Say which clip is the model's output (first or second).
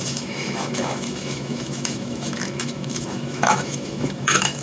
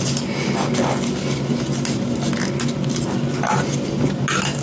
first